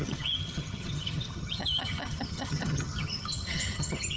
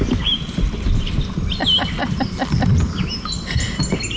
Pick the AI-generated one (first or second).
first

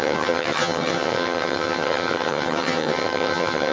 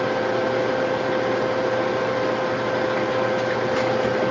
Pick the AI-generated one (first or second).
first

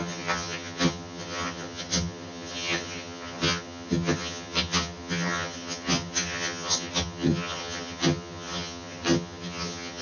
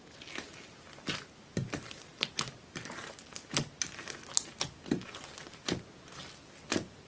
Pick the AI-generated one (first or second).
first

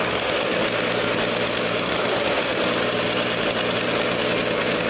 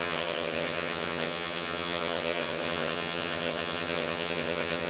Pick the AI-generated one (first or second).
second